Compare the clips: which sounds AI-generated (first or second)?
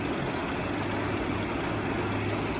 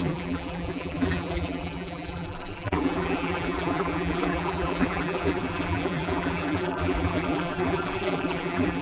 second